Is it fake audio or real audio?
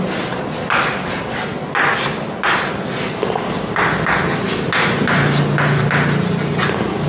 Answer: real